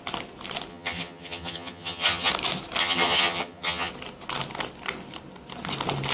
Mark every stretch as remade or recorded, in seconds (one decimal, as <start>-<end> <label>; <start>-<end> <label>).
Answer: 0.0-0.7 recorded; 0.7-2.3 remade; 2.3-2.8 recorded; 2.8-3.9 remade; 3.9-6.1 recorded